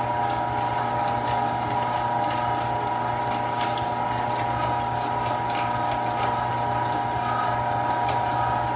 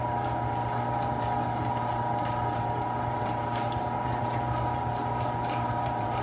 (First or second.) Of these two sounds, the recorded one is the first